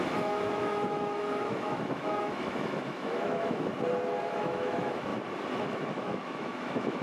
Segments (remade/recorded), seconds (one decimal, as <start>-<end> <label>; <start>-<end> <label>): 0.0-3.7 remade; 3.7-4.3 recorded; 4.3-5.1 remade; 5.1-5.6 recorded; 5.6-7.0 remade